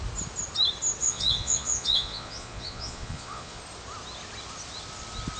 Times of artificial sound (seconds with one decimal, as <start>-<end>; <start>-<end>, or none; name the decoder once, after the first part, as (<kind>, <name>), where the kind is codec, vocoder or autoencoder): 1.0-3.6 (vocoder, Vocos)